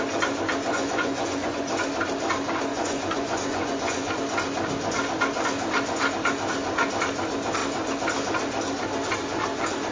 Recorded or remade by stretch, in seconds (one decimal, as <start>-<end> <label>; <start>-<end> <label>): 0.0-0.7 recorded; 0.7-1.7 remade; 1.7-2.7 recorded; 2.7-4.1 remade; 4.1-9.9 recorded